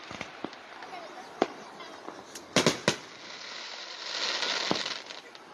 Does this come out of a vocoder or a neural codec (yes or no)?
no